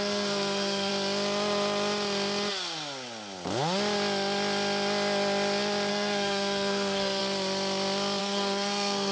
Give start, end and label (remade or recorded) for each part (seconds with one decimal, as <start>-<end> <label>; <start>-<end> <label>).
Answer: 0.0-0.9 remade; 0.9-5.9 recorded; 5.9-7.2 remade; 7.2-8.2 recorded; 8.2-9.1 remade